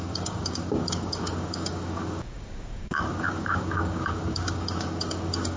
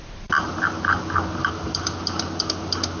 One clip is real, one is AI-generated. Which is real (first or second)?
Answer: second